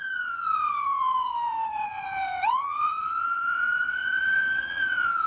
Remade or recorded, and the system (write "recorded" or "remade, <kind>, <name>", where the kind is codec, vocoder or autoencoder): remade, vocoder, WaveNeXt